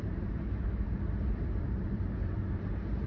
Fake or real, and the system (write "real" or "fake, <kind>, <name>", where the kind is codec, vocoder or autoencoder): fake, vocoder, BigVGAN v2